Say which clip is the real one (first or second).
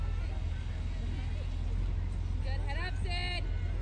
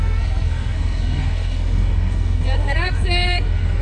first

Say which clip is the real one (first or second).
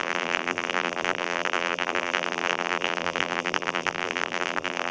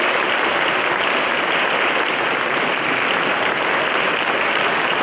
second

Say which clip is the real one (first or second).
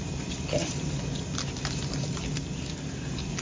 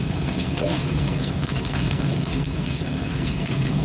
first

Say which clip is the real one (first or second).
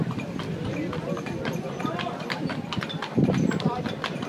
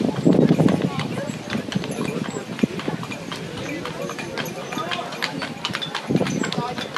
second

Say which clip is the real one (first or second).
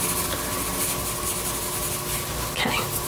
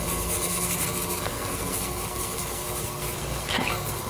first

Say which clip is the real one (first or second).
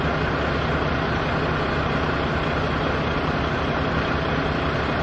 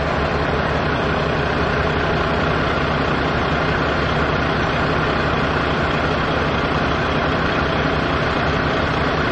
first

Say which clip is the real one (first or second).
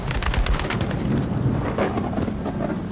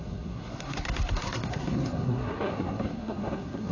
first